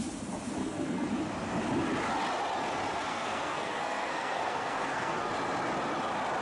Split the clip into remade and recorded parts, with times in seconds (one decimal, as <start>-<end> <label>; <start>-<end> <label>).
0.0-0.6 recorded; 0.6-1.1 remade; 1.1-3.1 recorded; 3.1-5.3 remade; 5.3-6.4 recorded